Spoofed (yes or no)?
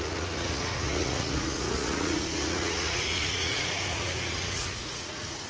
yes